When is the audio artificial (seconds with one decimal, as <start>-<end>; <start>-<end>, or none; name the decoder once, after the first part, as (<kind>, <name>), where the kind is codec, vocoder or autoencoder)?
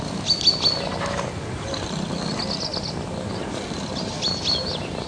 none